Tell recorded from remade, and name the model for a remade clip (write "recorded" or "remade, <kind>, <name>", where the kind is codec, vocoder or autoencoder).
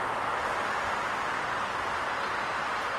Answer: recorded